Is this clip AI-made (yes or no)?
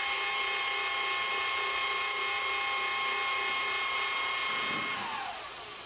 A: no